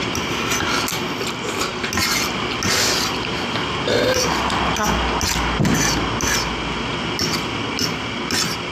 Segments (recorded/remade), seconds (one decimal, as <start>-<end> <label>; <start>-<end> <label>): 0.0-8.7 recorded